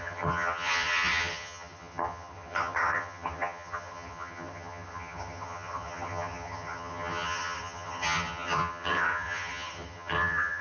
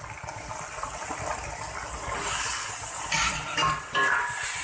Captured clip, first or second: second